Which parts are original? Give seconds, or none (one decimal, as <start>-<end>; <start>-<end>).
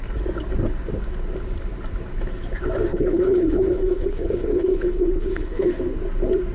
0.0-2.9; 5.8-6.5